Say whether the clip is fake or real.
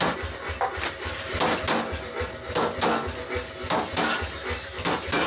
real